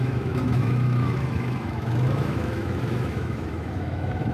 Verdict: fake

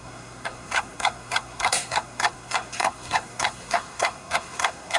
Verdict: fake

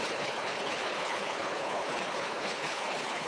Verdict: fake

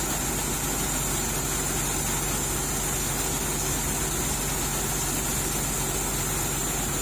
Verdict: real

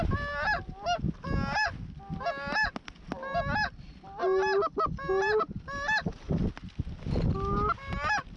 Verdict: real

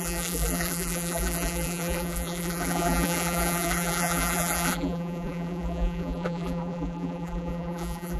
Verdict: fake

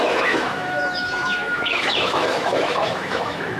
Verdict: fake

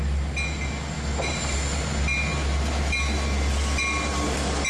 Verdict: real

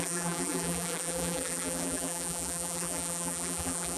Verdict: fake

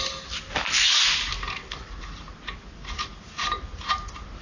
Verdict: real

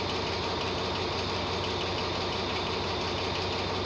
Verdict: real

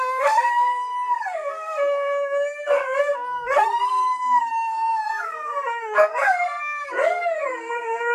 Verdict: fake